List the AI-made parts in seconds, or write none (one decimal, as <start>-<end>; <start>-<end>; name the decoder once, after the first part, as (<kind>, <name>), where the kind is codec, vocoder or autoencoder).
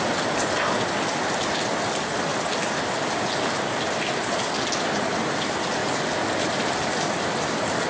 none